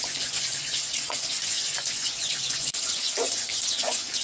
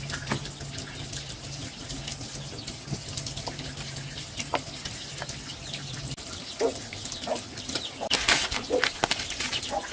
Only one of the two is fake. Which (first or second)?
first